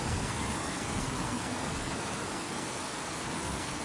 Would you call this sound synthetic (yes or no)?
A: yes